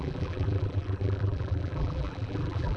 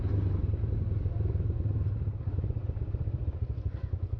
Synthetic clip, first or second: first